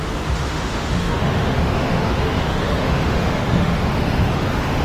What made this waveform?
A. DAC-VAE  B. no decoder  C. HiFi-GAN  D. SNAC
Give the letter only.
A